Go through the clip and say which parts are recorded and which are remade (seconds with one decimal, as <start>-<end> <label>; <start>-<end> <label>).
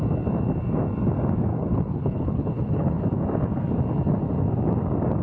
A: 0.0-1.5 recorded; 1.5-3.0 remade; 3.0-5.2 recorded